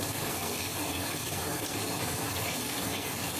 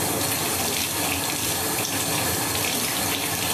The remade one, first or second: first